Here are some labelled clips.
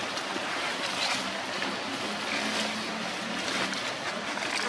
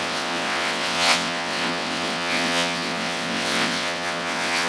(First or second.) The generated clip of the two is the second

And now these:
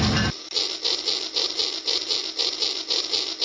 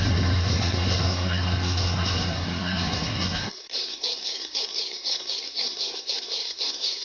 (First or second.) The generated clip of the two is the second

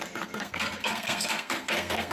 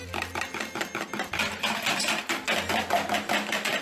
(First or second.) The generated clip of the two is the first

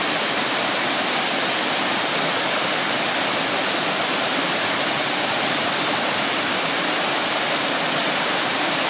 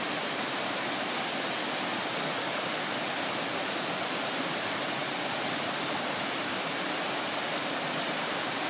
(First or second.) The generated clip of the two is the first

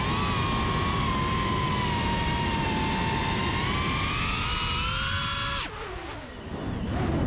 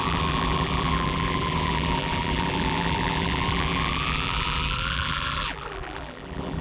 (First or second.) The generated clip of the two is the second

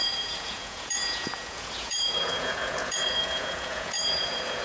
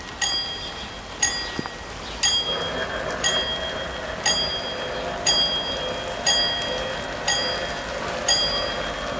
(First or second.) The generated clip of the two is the first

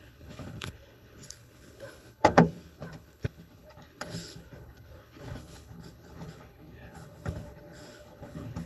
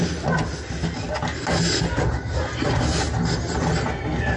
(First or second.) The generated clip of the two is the first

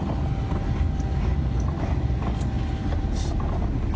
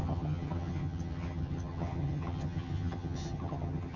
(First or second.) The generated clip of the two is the second